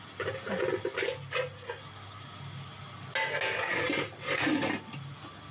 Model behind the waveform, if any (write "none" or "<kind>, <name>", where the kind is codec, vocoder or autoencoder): none